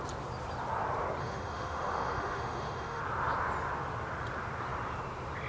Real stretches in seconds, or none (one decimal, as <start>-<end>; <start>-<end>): 0.0-1.2; 3.0-5.5